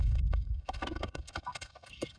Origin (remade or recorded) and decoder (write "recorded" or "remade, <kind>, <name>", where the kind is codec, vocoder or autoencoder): remade, codec, SNAC